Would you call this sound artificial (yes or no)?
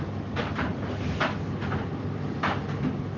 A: no